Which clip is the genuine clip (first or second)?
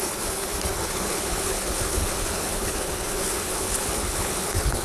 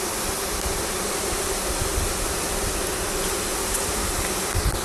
second